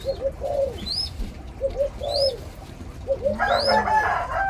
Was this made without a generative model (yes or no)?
yes